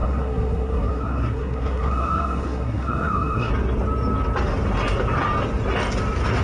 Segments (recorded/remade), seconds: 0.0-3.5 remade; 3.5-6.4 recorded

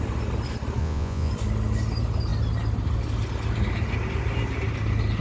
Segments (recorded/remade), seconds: 0.0-0.8 recorded; 0.8-1.3 remade; 1.3-5.2 recorded

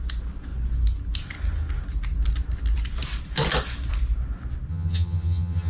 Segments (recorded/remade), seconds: 0.0-4.7 recorded; 4.7-5.7 remade

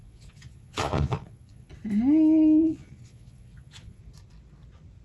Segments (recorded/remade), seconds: 0.0-1.7 remade; 1.7-2.6 recorded; 2.6-4.0 remade; 4.0-5.0 recorded

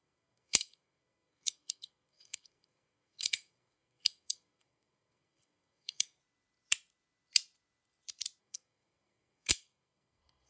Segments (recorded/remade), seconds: 0.0-6.2 remade; 6.2-8.4 recorded; 8.4-10.5 remade

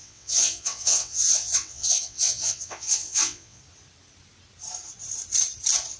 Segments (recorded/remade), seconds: 0.0-3.6 remade; 3.6-6.0 recorded